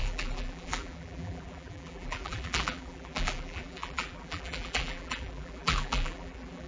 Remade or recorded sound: remade